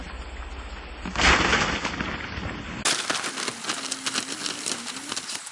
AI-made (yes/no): no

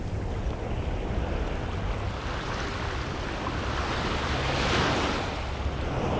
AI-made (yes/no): no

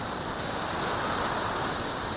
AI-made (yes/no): no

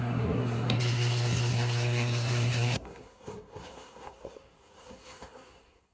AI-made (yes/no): yes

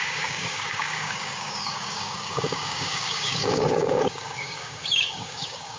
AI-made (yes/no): yes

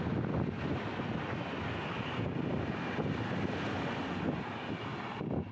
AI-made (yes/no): no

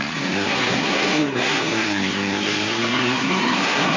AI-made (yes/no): yes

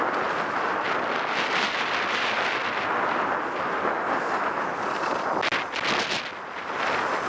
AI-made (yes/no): no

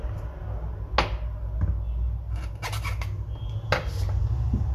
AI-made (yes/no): no